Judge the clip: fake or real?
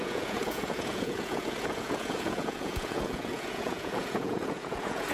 fake